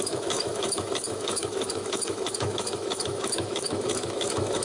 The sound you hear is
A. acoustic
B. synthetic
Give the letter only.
B